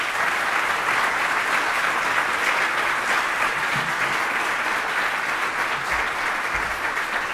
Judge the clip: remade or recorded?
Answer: recorded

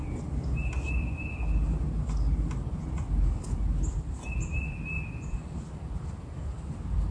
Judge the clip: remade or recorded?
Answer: recorded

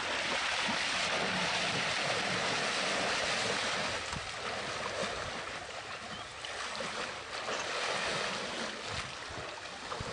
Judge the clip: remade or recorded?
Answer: recorded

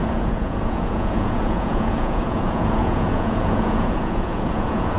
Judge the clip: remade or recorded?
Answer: remade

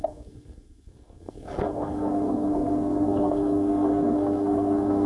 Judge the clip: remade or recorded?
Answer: remade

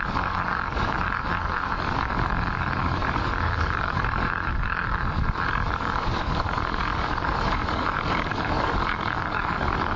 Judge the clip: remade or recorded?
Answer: remade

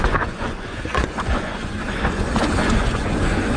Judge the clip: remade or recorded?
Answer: remade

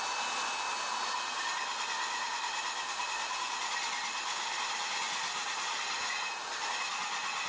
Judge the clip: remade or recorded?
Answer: recorded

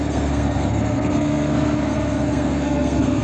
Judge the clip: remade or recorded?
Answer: remade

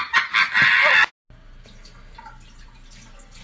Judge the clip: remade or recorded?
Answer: recorded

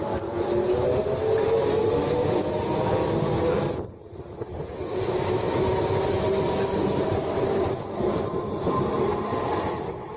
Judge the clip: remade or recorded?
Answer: recorded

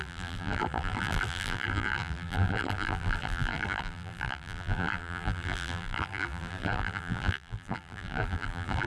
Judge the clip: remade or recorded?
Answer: remade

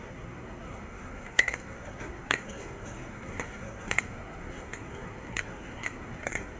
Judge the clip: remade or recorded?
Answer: remade